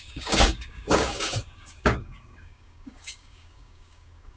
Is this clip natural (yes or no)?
no